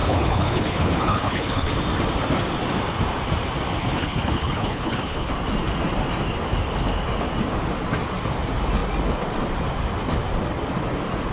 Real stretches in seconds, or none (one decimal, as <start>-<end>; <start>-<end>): 1.7-3.8; 5.3-11.3